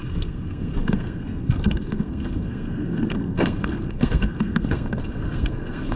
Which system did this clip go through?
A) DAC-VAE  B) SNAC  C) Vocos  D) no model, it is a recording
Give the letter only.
B